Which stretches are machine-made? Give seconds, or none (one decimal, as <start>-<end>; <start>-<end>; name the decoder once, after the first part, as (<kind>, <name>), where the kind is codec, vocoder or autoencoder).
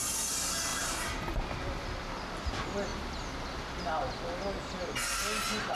none